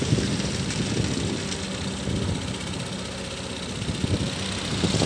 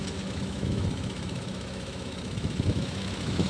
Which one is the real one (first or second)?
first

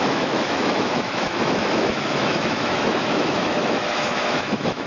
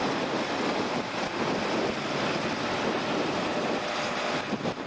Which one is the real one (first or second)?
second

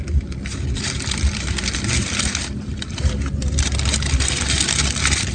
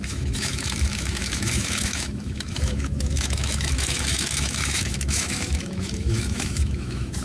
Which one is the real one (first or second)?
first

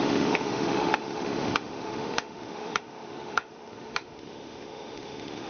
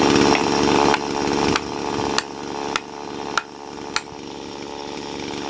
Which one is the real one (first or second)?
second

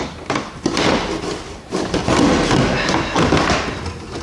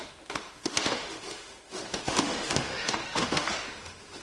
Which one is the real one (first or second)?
first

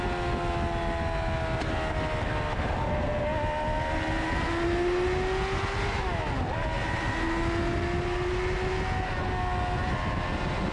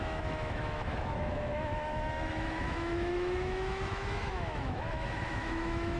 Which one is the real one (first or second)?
first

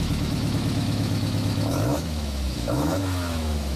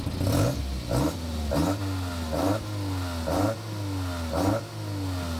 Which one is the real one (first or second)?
second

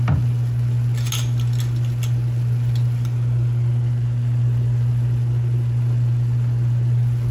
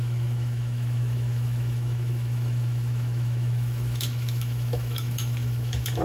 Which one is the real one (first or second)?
first